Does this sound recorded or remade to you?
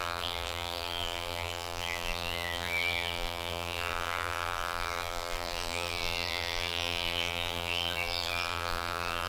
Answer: remade